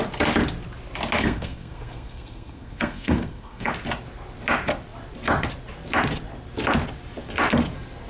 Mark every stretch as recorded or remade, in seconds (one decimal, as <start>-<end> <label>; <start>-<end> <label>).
0.0-1.2 recorded; 1.2-3.7 remade; 3.7-8.1 recorded